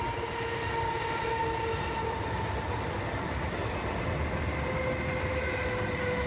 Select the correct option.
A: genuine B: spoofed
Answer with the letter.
A